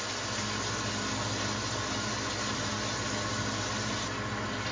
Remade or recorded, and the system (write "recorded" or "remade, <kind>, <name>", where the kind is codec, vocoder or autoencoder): recorded